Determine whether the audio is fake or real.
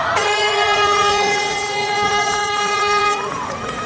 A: fake